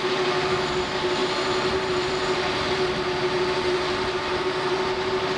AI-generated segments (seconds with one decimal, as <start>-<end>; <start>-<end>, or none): none